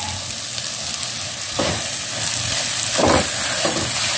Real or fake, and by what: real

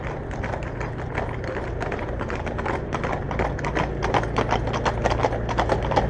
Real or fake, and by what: real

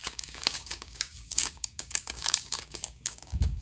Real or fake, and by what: fake, codec, DAC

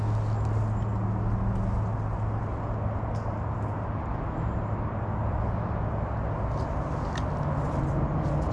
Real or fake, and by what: real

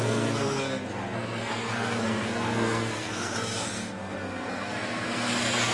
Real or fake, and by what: fake, codec, SNAC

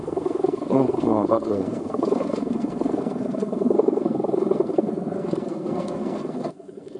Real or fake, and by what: fake, codec, SNAC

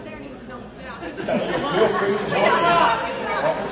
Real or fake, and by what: real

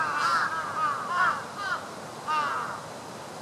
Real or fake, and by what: real